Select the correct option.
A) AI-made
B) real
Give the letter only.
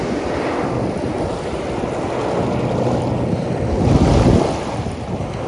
B